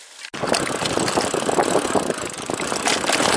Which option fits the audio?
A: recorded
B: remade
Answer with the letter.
A